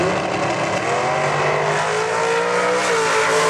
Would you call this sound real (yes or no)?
yes